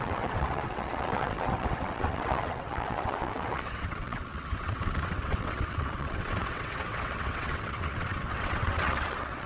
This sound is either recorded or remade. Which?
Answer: remade